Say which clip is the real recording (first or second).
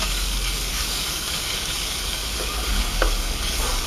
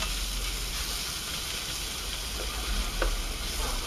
second